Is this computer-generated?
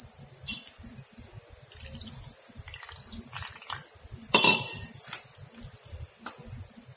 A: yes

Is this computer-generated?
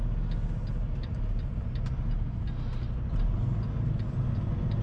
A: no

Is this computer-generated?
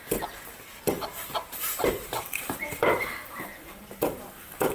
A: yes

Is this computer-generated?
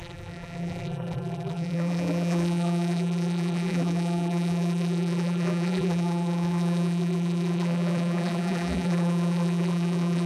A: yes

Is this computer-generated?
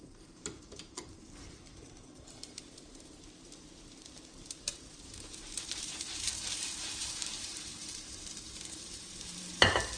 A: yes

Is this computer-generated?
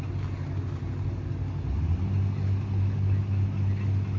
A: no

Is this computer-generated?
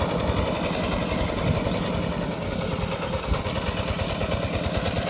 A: no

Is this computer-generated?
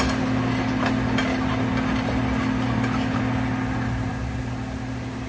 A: no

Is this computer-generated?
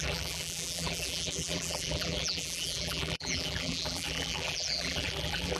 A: yes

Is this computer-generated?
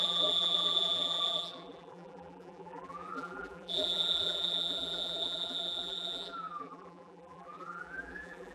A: yes